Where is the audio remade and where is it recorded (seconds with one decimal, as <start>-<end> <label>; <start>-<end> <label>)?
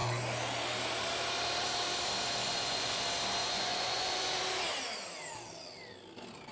0.0-2.4 recorded; 2.4-3.0 remade; 3.0-3.4 recorded; 3.4-4.4 remade; 4.4-6.5 recorded